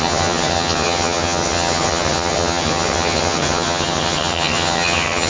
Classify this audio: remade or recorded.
remade